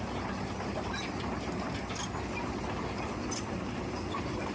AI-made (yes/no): no